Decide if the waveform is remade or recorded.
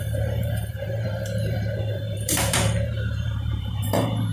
remade